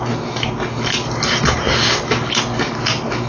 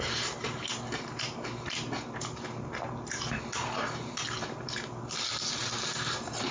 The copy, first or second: second